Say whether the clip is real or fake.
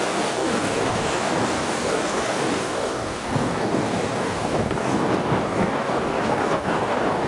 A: fake